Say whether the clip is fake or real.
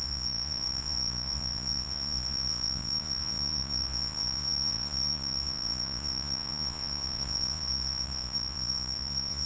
fake